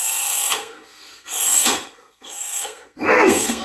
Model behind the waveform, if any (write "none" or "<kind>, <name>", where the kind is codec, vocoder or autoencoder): codec, SNAC